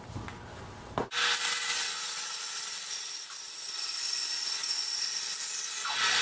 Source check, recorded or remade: recorded